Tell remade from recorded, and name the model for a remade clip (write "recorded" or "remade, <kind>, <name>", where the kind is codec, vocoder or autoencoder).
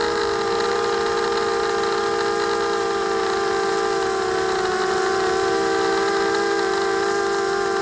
recorded